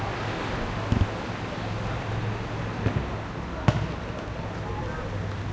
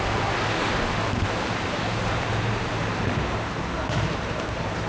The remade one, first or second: second